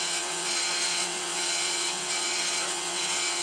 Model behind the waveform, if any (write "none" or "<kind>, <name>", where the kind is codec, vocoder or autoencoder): vocoder, WaveNeXt